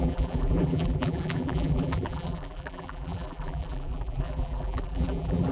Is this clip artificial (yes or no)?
yes